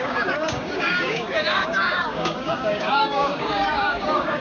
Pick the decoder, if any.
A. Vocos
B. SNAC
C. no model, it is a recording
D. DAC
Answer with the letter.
D